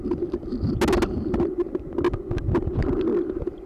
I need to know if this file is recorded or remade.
recorded